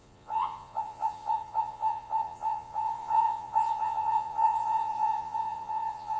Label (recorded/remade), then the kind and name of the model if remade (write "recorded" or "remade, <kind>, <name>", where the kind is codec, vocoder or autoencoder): remade, vocoder, Vocos